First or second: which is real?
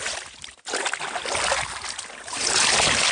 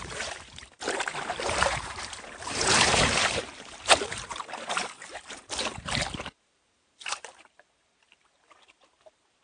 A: first